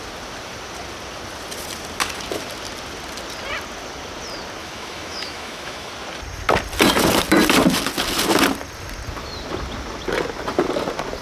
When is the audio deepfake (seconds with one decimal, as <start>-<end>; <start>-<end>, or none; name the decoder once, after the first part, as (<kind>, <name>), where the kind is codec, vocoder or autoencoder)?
4.6-5.9 (autoencoder, DAC-VAE)